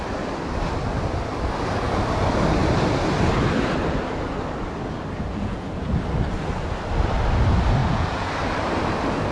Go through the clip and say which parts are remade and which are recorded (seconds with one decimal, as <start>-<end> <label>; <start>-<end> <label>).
0.0-5.3 recorded; 5.3-5.9 remade; 5.9-7.8 recorded; 7.8-8.3 remade; 8.3-9.3 recorded